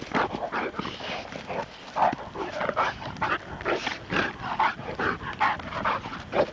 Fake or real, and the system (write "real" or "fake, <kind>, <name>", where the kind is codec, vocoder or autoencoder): real